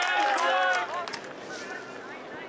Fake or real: real